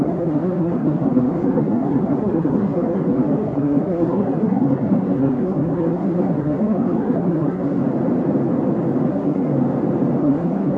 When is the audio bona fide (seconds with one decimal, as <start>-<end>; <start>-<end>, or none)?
7.8-9.1; 9.5-10.2